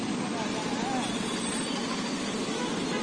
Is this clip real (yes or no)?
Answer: yes